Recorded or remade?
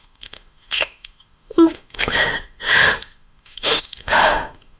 remade